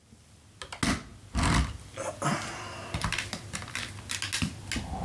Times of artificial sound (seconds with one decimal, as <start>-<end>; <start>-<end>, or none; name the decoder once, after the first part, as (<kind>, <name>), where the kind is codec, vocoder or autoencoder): none